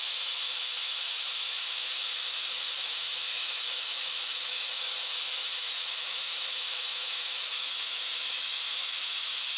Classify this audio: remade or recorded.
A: remade